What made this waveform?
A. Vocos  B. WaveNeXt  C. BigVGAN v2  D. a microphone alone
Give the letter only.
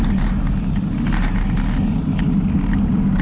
D